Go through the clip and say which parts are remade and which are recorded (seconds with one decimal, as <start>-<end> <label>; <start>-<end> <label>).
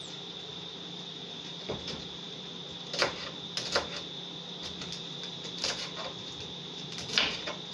0.0-0.5 recorded; 0.5-2.6 remade; 2.6-4.6 recorded; 4.6-7.7 remade